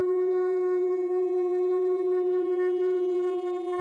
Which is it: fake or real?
fake